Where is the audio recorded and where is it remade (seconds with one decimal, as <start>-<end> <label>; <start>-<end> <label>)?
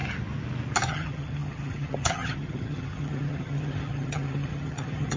0.0-0.9 recorded; 0.9-5.2 remade